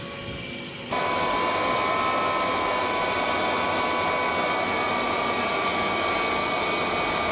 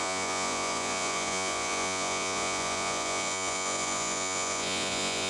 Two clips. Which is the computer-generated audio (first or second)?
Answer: second